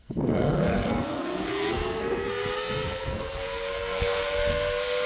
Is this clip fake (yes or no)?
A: yes